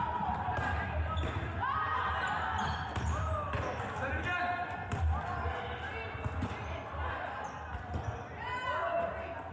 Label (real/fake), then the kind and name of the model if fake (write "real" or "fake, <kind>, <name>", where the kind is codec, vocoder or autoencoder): real